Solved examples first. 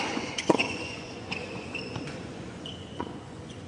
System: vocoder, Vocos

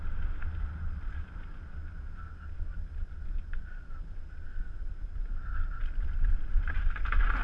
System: none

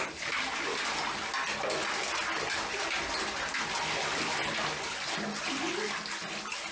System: none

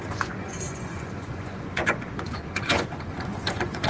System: vocoder, Vocos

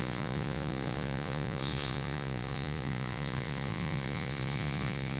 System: vocoder, Vocos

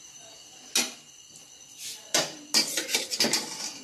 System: none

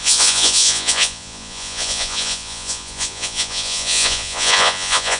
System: vocoder, Vocos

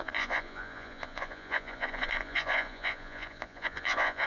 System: vocoder, Vocos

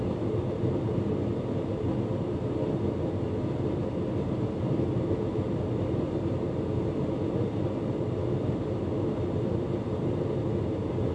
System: none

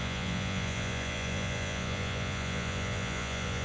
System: vocoder, Vocos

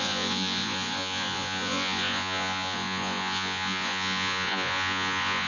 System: vocoder, Vocos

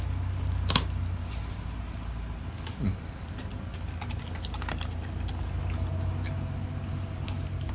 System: none